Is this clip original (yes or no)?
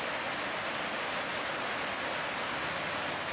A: yes